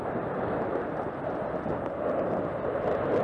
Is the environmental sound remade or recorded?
recorded